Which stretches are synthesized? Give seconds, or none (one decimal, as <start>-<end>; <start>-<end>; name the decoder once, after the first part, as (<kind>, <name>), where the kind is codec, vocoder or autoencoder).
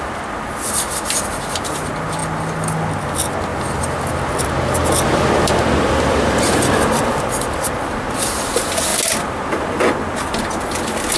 3.5-4.1 (vocoder, BigVGAN v2); 4.8-7.7